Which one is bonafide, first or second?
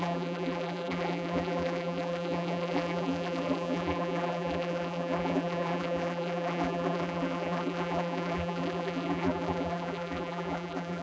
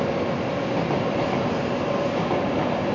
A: second